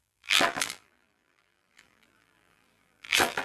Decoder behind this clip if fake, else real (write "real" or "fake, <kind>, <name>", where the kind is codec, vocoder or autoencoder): fake, vocoder, BigVGAN v2